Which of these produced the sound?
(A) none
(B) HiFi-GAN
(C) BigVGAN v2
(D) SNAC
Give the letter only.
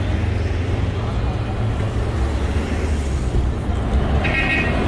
A